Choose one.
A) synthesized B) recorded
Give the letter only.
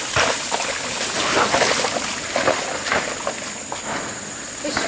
B